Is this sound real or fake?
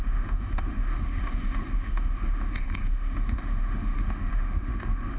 fake